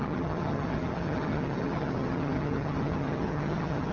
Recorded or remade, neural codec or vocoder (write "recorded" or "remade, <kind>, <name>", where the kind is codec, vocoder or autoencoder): remade, vocoder, HiFi-GAN